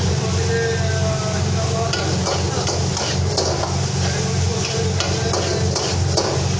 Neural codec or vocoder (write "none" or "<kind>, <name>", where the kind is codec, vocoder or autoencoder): none